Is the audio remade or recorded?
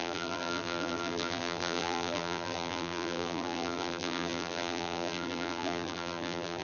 remade